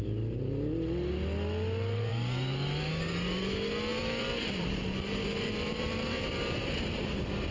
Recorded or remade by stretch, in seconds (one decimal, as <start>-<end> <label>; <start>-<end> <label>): 0.0-2.1 recorded; 2.1-2.9 remade; 2.9-3.9 recorded; 3.9-6.6 remade; 6.6-7.5 recorded